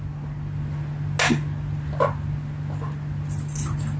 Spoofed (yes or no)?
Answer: no